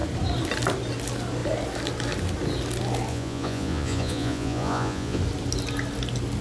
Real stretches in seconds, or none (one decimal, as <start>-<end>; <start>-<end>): 0.0-3.1; 5.2-6.4